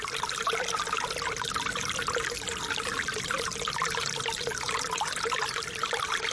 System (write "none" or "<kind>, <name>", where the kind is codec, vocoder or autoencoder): none